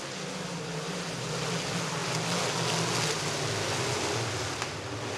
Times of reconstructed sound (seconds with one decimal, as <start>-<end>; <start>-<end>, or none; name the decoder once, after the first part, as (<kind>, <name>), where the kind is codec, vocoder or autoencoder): none